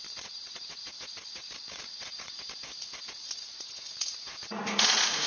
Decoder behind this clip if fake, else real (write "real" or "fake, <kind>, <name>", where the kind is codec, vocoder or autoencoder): fake, vocoder, Vocos